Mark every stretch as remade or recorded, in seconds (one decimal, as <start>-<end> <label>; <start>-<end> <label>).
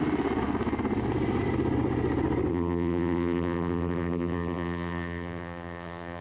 0.0-2.5 recorded; 2.5-6.2 remade